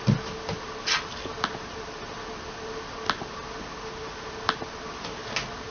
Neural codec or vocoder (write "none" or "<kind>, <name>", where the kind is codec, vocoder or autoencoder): none